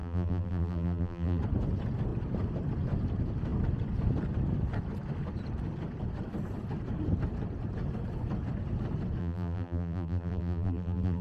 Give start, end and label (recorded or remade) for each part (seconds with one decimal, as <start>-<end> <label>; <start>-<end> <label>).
0.0-1.4 remade; 1.4-9.2 recorded; 9.2-11.2 remade